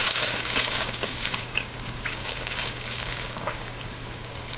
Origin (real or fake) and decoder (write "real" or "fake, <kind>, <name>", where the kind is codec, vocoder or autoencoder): fake, codec, DAC